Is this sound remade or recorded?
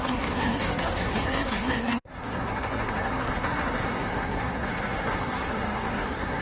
remade